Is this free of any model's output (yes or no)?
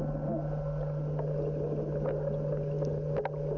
yes